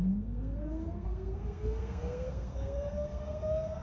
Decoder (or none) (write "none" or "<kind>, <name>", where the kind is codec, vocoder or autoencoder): codec, SNAC